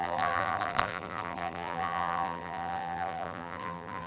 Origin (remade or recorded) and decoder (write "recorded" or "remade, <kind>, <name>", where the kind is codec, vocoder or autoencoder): remade, vocoder, BigVGAN v2